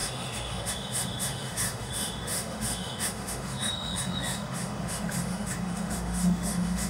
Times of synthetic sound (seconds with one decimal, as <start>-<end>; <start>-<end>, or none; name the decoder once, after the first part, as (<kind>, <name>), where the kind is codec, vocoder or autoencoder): 0.0-6.9 (autoencoder, DAC-VAE)